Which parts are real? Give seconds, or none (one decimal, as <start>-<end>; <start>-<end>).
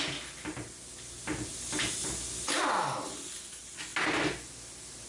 0.0-5.1